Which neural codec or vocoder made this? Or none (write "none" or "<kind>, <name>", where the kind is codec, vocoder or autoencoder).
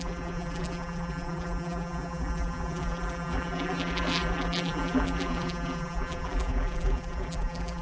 vocoder, BigVGAN v2